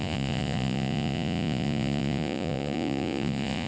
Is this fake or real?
fake